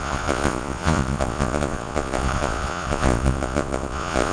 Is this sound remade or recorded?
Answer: remade